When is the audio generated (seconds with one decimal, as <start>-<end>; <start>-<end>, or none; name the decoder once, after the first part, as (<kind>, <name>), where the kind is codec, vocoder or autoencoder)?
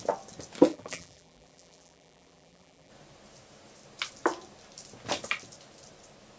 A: 0.7-2.9 (vocoder, BigVGAN v2)